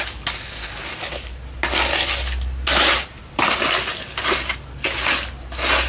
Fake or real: real